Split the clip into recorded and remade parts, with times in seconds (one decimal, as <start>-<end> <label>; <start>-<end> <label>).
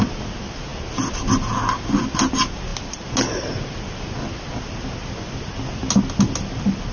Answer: 0.0-6.9 recorded